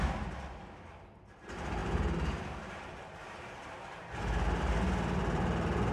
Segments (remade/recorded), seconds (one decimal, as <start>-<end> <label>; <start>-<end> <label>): 0.0-5.9 recorded